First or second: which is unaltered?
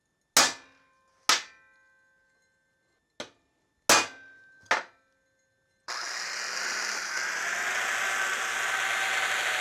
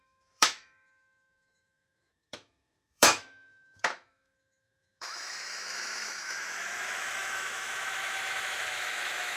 first